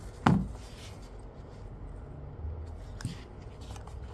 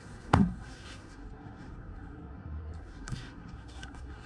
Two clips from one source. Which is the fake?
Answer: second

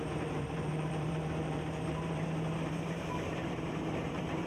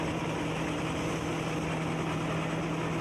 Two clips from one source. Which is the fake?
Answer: first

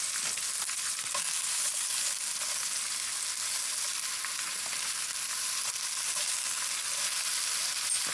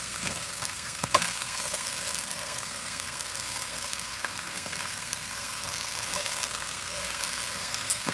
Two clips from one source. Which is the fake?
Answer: second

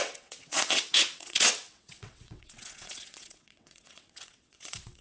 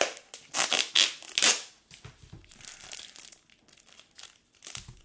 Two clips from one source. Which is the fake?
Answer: first